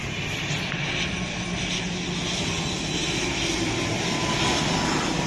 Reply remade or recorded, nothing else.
recorded